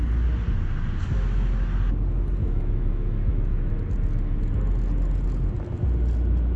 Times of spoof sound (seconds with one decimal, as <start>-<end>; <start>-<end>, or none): 2.4-3.7